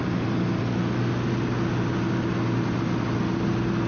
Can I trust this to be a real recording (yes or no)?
yes